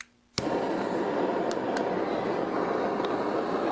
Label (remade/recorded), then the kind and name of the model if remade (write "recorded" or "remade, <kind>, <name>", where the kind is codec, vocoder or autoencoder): recorded